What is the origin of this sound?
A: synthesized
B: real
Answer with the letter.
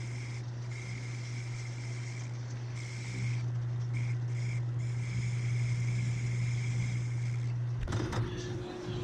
B